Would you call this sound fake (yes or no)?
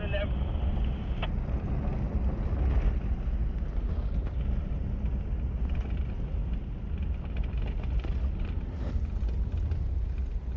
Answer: no